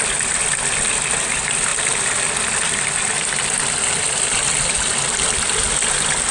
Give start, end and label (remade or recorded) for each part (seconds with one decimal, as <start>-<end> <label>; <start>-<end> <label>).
0.0-6.3 recorded

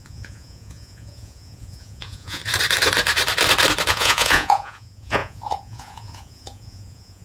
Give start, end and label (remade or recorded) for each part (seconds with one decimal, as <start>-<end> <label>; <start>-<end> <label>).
0.0-2.4 remade; 2.4-3.9 recorded; 3.9-7.2 remade

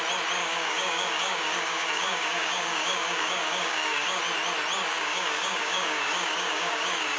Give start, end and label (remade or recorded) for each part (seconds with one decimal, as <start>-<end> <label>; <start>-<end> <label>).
0.0-0.4 recorded; 0.4-4.2 remade; 4.2-4.9 recorded; 4.9-7.2 remade